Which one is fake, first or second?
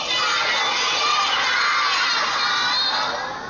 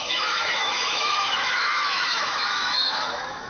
second